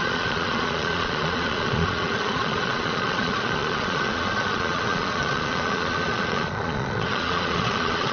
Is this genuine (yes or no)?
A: no